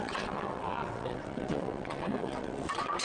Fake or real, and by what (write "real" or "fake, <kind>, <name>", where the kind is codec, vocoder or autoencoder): fake, vocoder, WaveNeXt